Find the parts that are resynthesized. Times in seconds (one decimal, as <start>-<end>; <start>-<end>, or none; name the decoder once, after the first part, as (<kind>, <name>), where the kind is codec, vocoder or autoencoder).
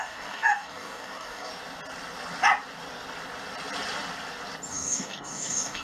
0.0-1.5 (codec, DAC); 4.7-5.8